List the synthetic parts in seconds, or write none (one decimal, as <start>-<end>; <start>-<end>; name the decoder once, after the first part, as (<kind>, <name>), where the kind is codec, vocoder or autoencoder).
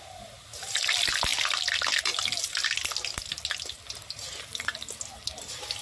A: none